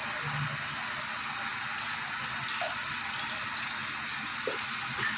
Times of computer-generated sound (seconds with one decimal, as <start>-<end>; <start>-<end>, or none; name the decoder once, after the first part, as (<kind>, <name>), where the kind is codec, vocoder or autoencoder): none